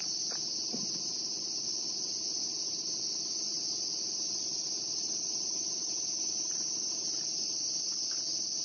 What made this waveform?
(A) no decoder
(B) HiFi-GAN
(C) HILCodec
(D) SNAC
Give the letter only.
A